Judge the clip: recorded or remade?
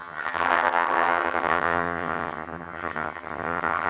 remade